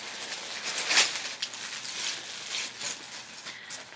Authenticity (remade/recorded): recorded